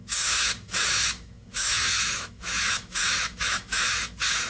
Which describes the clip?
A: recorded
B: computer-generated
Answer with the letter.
B